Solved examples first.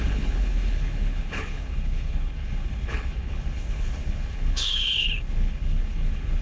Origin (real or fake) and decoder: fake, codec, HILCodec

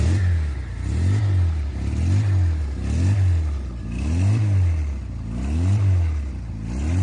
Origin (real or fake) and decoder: real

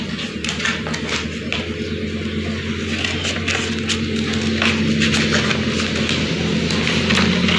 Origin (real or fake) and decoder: real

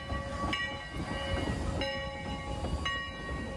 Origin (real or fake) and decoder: real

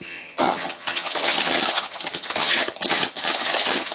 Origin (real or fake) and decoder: fake, vocoder, HiFi-GAN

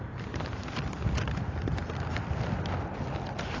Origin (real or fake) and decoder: real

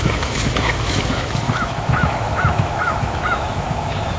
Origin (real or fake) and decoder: fake, autoencoder, DAC-VAE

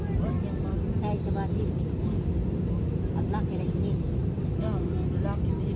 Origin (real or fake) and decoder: fake, vocoder, BigVGAN v2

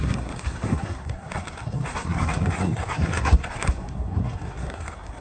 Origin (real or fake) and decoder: fake, codec, SNAC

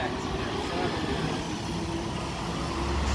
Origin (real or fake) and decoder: real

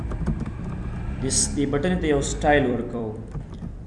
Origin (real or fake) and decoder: fake, vocoder, BigVGAN v2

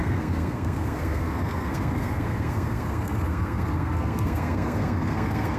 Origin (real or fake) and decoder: fake, codec, SNAC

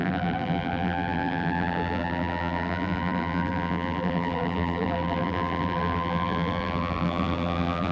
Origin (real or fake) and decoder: fake, vocoder, BigVGAN v2